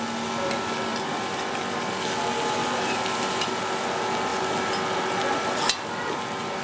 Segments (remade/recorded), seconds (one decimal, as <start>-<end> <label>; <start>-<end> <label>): 0.0-6.6 recorded